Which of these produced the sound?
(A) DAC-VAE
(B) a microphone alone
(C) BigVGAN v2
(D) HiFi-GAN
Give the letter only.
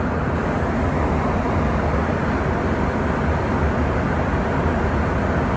B